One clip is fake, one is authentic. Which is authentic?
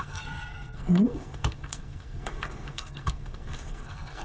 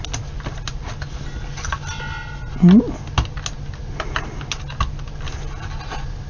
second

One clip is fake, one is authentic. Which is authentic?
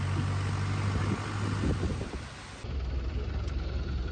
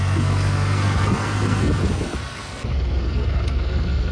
first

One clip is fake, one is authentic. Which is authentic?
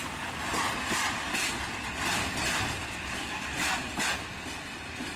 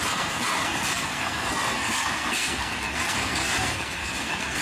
first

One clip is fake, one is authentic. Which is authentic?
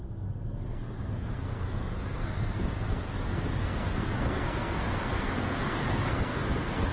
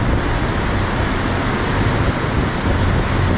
second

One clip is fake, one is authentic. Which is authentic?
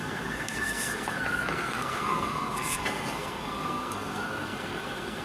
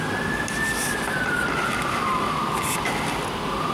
second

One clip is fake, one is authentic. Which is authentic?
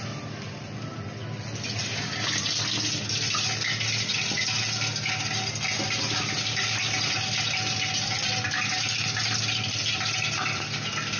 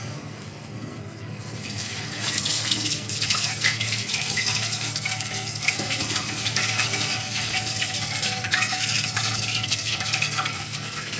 first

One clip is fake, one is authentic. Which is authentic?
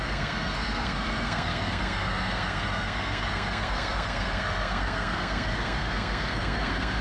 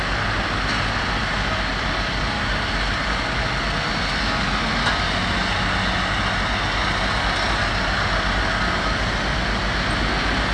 second